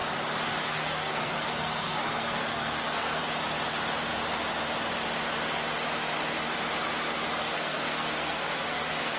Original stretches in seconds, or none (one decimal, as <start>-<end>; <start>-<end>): 0.0-0.6; 3.2-7.4